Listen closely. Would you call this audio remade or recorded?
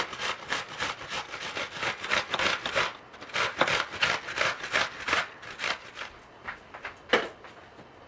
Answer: recorded